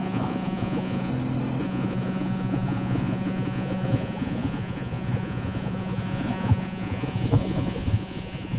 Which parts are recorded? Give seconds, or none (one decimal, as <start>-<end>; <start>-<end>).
1.1-1.6